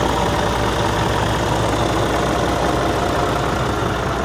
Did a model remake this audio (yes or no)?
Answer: no